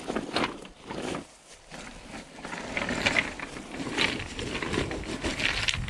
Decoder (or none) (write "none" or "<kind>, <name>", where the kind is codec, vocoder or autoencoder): none